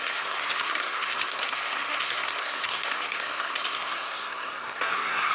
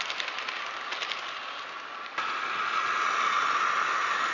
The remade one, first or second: first